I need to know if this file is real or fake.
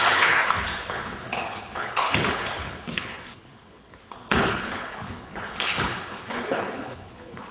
fake